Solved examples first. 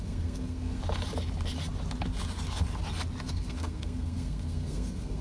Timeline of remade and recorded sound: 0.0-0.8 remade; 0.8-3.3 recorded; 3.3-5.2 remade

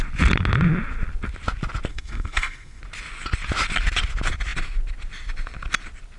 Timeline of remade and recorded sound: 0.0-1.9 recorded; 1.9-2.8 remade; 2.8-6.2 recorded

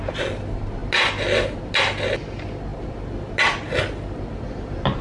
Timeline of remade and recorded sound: 0.0-5.0 recorded

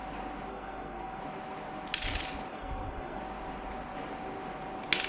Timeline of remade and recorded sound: 0.0-0.5 recorded; 0.5-1.2 remade; 1.2-2.5 recorded; 2.5-3.2 remade; 3.2-5.1 recorded

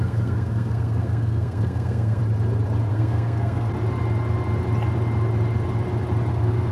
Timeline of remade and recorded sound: 0.0-2.2 remade; 2.2-2.9 recorded; 2.9-3.7 remade; 3.7-6.3 recorded; 6.3-6.7 remade